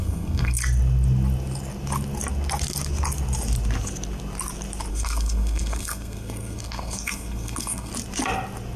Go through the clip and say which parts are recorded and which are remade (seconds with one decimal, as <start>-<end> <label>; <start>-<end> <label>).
0.0-0.6 remade; 0.6-4.9 recorded; 4.9-7.9 remade; 7.9-8.8 recorded

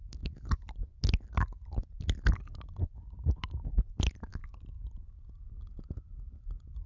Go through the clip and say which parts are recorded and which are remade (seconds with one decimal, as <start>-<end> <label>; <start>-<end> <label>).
0.0-4.4 remade; 4.4-6.3 recorded; 6.3-6.9 remade